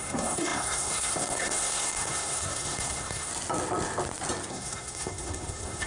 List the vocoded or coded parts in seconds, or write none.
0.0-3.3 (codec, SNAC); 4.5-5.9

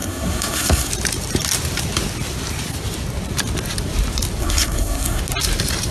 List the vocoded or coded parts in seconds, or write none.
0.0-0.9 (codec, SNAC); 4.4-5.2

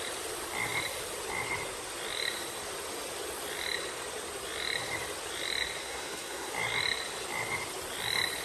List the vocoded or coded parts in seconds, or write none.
5.8-6.5 (codec, SNAC)